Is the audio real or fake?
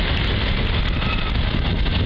real